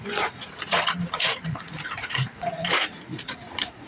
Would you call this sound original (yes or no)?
no